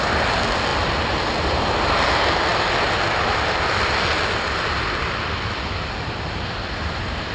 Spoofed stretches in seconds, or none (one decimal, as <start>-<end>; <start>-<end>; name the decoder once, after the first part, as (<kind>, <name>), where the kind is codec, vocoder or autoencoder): none